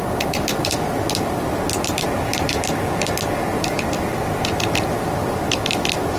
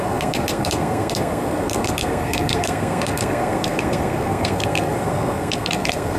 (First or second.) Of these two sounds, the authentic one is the first